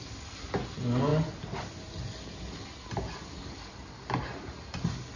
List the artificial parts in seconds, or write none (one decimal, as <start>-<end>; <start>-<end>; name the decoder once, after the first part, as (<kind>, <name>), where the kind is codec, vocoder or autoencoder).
none